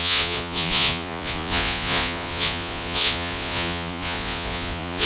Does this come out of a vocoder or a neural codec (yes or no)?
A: yes